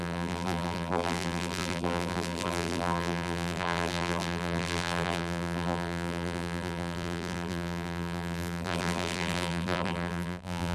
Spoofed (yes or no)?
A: yes